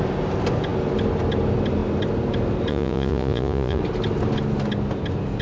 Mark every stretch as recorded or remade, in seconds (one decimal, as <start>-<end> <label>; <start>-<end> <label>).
0.0-2.7 recorded; 2.7-3.8 remade; 3.8-5.4 recorded